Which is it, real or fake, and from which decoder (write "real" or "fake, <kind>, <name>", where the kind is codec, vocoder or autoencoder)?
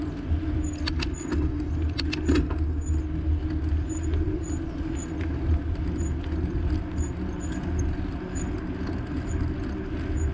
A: real